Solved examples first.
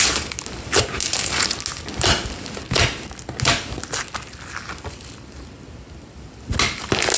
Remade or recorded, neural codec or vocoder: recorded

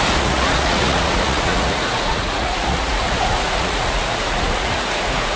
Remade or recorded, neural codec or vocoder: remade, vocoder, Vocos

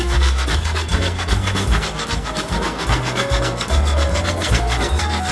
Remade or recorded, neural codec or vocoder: remade, codec, SNAC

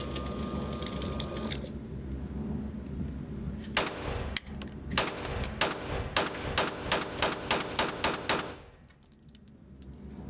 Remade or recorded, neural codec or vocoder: recorded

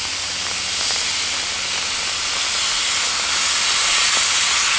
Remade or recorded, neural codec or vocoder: recorded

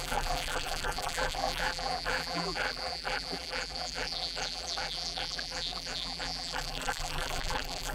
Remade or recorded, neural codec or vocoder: remade, vocoder, BigVGAN v2